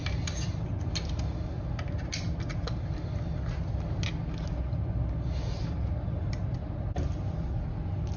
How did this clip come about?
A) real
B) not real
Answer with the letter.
A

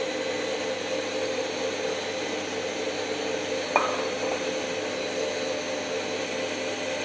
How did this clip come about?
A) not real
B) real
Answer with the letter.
B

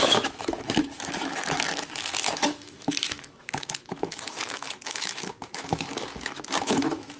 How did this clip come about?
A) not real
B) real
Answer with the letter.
A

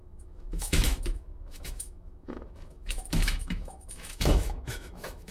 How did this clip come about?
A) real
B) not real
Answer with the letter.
B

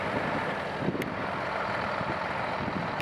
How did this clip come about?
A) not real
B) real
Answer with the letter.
B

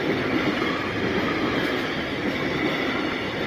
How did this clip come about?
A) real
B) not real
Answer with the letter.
A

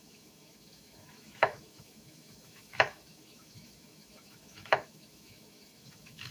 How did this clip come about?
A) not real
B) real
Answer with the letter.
A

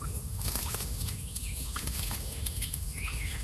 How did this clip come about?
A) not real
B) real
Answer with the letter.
A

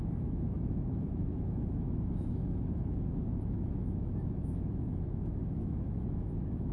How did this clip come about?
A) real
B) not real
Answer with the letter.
B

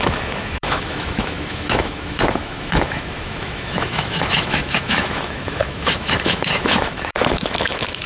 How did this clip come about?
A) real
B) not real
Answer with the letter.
B